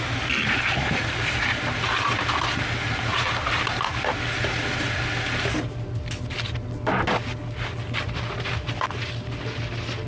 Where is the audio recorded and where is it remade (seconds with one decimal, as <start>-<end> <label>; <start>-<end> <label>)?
0.0-10.1 recorded